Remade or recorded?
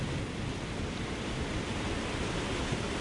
recorded